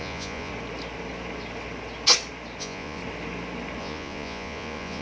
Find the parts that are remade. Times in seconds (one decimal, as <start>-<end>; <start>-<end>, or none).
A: 0.0-0.5; 2.6-3.0; 3.8-5.0